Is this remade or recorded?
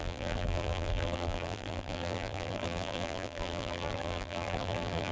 remade